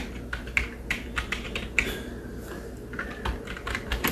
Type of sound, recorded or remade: recorded